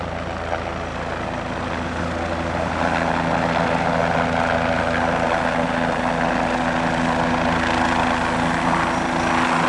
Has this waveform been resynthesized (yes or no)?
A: no